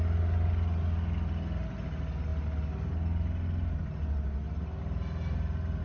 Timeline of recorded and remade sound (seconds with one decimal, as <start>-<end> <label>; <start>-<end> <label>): 0.0-5.8 recorded